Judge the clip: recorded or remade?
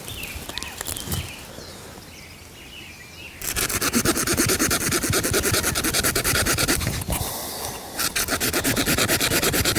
recorded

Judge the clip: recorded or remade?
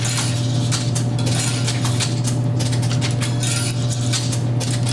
recorded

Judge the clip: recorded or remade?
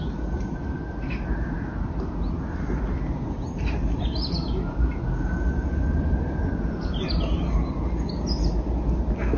recorded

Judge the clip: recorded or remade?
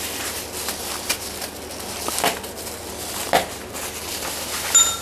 recorded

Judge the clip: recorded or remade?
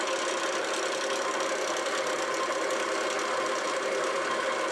recorded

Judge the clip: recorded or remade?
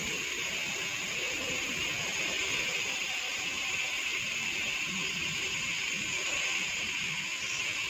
recorded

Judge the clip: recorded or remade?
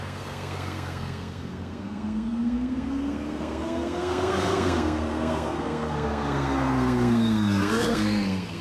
remade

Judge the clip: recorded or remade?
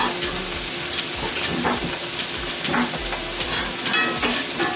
recorded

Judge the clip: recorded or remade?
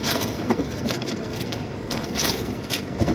remade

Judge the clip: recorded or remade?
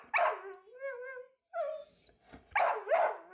recorded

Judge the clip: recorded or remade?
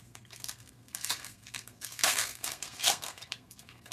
remade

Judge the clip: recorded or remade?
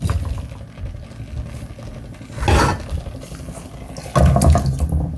recorded